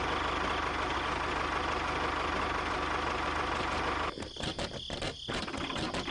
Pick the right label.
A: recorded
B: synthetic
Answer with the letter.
A